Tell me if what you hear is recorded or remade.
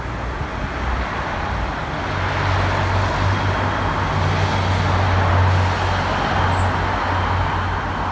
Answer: recorded